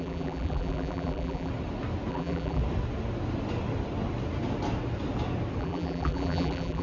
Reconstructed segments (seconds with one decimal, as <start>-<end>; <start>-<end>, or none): 0.0-1.5; 2.1-2.6; 5.6-6.8